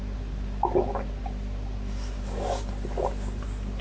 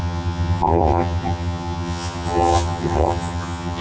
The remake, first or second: second